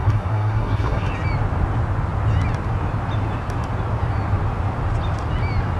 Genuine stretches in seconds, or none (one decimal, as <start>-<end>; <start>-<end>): 1.1-5.8